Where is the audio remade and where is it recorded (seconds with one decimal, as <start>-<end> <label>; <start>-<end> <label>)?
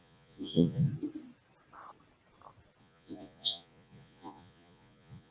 0.0-0.9 remade; 0.9-2.8 recorded; 2.8-5.3 remade